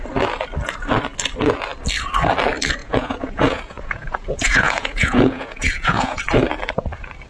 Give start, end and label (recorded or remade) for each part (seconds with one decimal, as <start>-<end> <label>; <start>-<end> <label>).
0.0-2.8 recorded; 2.8-6.2 remade; 6.2-7.3 recorded